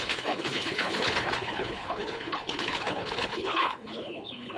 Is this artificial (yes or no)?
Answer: yes